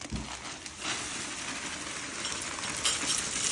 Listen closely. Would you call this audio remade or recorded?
recorded